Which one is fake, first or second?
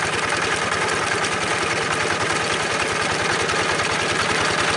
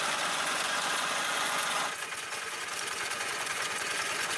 second